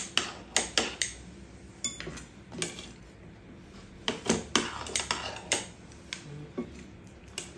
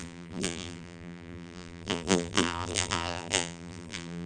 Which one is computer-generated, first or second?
second